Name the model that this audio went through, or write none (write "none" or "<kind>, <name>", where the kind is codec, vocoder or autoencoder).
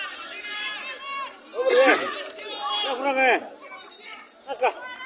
none